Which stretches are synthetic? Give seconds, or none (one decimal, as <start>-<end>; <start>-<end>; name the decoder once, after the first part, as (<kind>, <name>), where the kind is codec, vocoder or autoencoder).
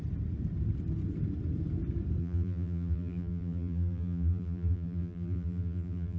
2.2-6.2 (vocoder, BigVGAN v2)